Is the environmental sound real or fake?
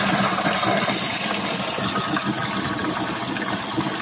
real